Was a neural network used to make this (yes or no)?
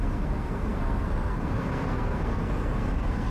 yes